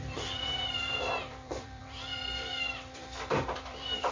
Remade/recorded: remade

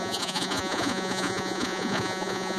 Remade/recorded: remade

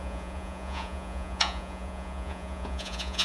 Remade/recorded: remade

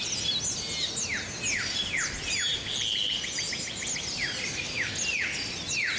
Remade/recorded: recorded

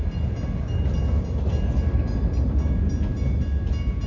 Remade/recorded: recorded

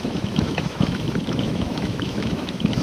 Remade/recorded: remade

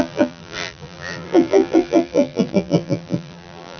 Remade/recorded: remade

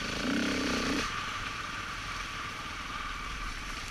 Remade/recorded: remade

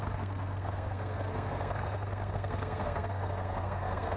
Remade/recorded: remade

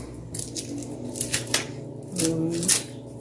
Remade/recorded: recorded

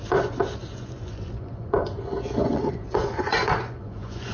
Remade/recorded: remade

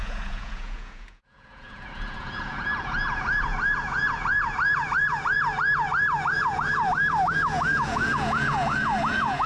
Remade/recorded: remade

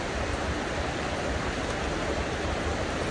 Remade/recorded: recorded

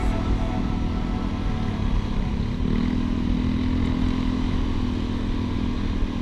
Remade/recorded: recorded